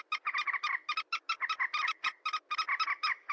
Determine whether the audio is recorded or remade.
recorded